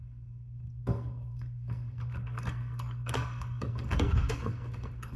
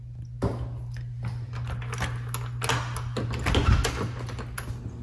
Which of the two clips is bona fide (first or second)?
second